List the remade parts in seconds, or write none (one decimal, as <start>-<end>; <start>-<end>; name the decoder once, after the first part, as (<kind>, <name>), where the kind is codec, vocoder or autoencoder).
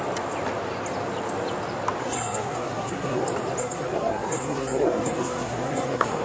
2.0-3.2 (codec, SNAC); 3.6-6.2